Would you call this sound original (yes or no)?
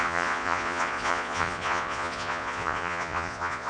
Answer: no